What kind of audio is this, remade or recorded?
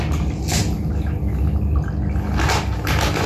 recorded